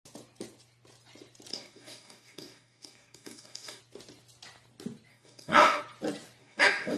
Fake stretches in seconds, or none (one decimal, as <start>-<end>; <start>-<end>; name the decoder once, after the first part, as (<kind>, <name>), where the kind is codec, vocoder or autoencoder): 1.5-3.8 (codec, DAC); 5.1-5.8; 6.4-7.0